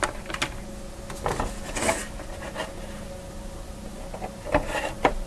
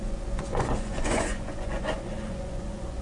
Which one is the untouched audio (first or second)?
first